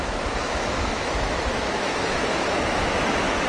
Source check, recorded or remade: remade